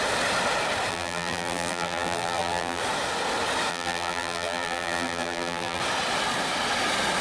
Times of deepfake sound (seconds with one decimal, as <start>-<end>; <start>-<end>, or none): 0.9-2.8; 3.7-5.8